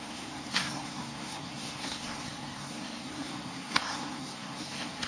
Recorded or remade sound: remade